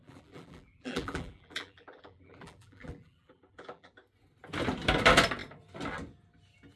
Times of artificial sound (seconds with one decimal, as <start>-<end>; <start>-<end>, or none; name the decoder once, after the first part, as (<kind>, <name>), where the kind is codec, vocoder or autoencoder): 0.0-3.9 (vocoder, BigVGAN v2)